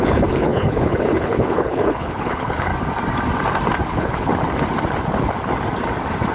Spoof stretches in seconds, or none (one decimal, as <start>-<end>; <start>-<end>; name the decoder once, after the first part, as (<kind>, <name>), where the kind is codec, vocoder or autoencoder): 0.0-2.7 (codec, HILCodec); 3.9-4.3